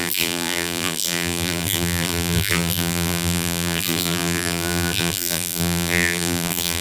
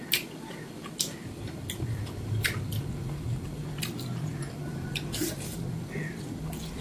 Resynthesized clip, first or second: first